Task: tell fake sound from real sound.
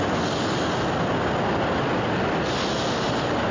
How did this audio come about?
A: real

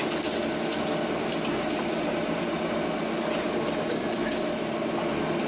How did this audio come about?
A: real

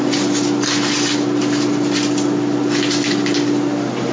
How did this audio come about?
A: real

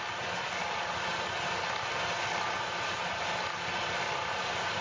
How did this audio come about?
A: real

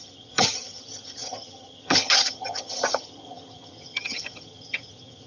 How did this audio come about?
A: fake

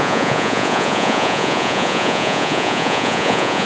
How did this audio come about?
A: fake